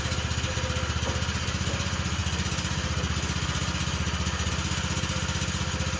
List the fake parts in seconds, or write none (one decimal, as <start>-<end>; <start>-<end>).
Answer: none